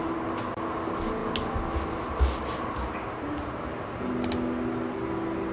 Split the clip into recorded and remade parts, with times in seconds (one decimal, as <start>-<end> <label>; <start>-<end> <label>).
0.0-5.5 recorded